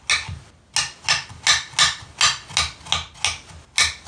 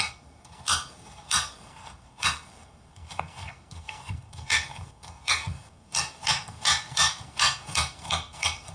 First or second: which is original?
first